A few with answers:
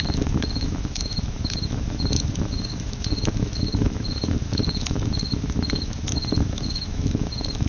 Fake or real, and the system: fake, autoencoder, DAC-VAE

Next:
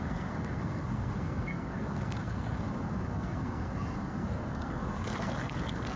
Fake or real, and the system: fake, codec, SNAC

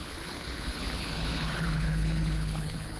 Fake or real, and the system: fake, codec, HILCodec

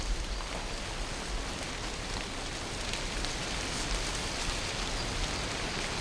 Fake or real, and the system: real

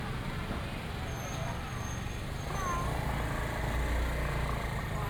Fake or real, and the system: real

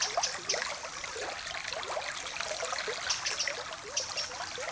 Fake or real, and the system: real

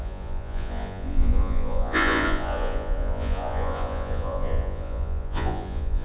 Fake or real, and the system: fake, vocoder, Vocos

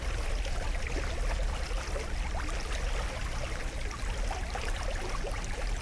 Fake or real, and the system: real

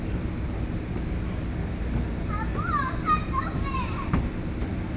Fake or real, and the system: real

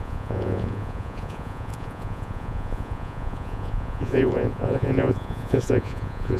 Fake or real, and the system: fake, vocoder, Vocos